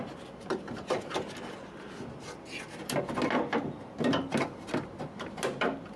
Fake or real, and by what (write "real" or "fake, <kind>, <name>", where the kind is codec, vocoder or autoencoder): real